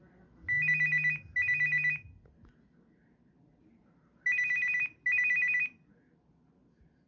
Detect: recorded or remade recorded